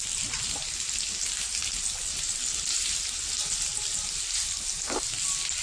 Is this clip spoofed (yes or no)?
no